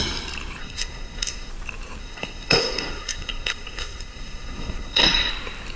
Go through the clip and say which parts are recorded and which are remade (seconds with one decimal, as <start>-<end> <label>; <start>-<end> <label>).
0.0-0.6 recorded; 0.6-1.5 remade; 1.5-2.0 recorded; 2.0-5.3 remade; 5.3-5.8 recorded